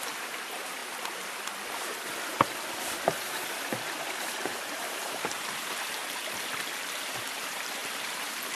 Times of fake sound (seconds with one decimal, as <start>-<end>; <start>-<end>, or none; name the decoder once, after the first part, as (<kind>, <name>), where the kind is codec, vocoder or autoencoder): 0.0-0.8 (vocoder, BigVGAN v2); 3.3-6.0; 7.2-8.5